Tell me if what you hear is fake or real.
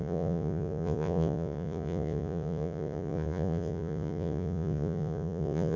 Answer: fake